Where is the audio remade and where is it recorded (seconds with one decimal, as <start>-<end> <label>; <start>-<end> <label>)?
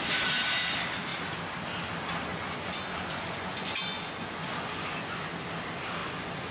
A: 0.0-2.3 recorded; 2.3-5.3 remade; 5.3-6.0 recorded; 6.0-6.5 remade